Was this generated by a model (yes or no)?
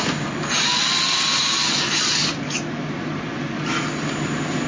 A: no